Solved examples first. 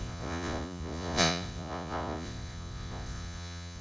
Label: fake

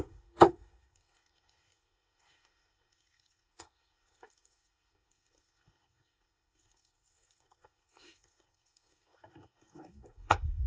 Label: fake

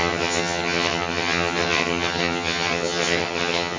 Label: fake